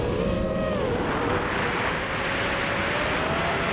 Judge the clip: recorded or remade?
recorded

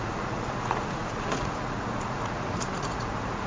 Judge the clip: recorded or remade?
remade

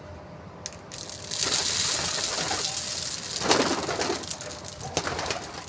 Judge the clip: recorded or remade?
recorded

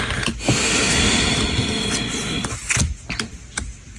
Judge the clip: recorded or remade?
recorded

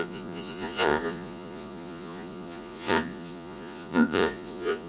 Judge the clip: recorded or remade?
remade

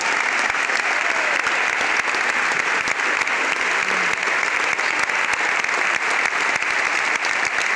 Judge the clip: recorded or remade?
recorded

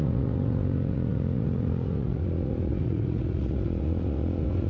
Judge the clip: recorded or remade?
remade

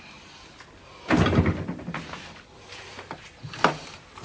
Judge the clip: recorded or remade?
recorded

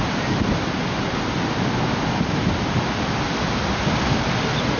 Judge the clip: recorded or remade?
recorded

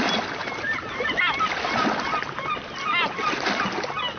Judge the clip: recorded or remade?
recorded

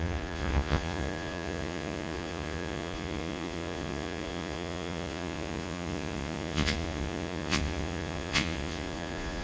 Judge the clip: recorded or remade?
remade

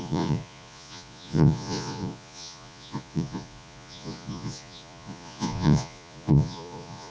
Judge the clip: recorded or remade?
remade